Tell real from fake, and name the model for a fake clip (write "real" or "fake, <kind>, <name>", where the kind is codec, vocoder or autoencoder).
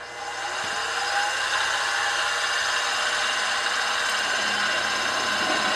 real